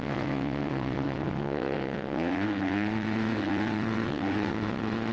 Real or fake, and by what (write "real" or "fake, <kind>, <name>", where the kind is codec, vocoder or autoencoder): fake, vocoder, WaveNeXt